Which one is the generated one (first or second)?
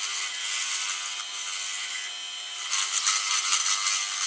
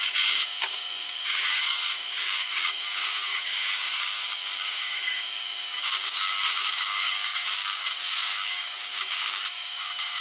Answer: second